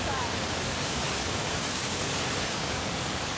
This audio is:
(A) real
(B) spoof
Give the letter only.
B